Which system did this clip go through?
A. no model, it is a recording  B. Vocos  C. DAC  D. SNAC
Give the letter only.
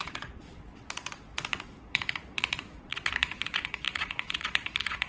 B